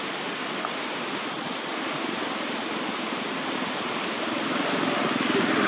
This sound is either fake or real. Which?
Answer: real